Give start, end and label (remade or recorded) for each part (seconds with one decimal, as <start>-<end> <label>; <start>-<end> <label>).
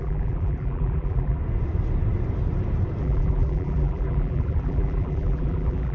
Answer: 0.0-1.4 remade; 1.4-3.0 recorded; 3.0-5.9 remade